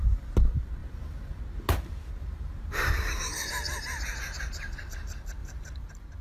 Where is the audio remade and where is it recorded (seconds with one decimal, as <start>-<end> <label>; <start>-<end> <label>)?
0.0-0.8 recorded; 0.8-1.4 remade; 1.4-2.2 recorded; 2.2-2.9 remade; 2.9-5.4 recorded; 5.4-6.2 remade